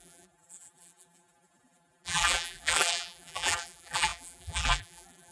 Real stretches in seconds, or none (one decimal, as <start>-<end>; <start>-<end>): none